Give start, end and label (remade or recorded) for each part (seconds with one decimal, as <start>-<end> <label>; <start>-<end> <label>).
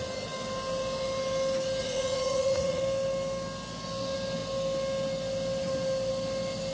0.0-1.8 recorded; 1.8-2.8 remade; 2.8-6.7 recorded